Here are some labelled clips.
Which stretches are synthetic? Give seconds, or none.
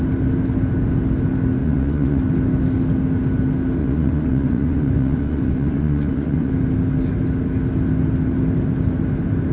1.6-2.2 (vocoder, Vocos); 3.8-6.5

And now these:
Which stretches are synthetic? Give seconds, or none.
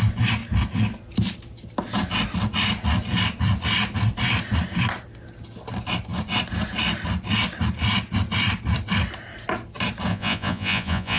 10.1-11.2 (vocoder, Vocos)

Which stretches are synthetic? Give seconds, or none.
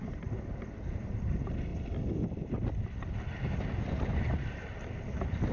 none